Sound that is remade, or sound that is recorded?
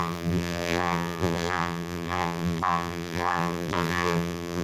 remade